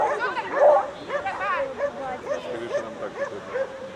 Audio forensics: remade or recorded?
recorded